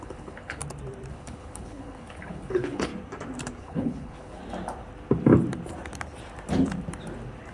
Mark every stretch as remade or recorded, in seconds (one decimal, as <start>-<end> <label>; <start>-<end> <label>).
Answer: 0.0-0.6 remade; 0.6-1.1 recorded; 1.1-2.9 remade; 2.9-3.6 recorded; 3.6-4.4 remade; 4.4-7.5 recorded